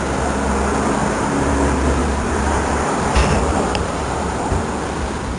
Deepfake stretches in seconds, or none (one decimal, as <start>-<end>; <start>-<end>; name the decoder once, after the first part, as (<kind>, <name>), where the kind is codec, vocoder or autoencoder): 1.0-1.5 (vocoder, BigVGAN v2); 2.0-4.5